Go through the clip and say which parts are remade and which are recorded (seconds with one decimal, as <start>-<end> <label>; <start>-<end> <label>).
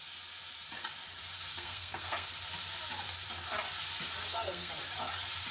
0.0-1.5 recorded; 1.5-2.3 remade; 2.3-4.2 recorded; 4.2-4.7 remade; 4.7-5.5 recorded